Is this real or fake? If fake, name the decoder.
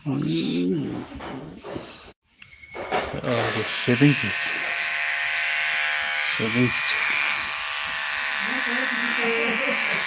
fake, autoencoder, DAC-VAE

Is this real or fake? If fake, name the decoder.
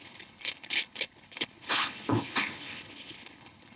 fake, codec, HILCodec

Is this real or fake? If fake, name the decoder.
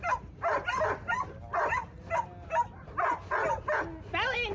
real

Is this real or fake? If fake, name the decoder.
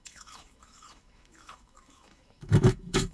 fake, autoencoder, DAC-VAE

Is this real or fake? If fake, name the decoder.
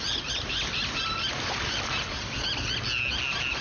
real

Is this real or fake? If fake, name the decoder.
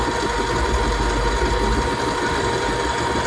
real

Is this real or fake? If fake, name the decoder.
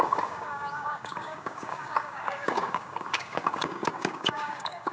fake, codec, DAC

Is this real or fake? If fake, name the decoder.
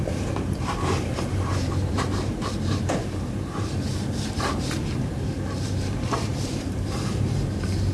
fake, vocoder, BigVGAN v2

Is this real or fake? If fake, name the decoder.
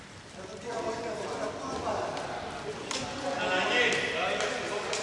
real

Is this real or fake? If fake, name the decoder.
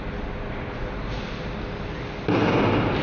real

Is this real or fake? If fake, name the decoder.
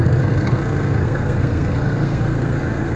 fake, codec, SNAC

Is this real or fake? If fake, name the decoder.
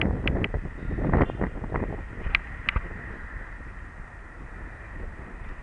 real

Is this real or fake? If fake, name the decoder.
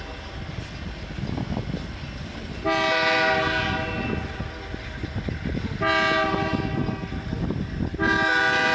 real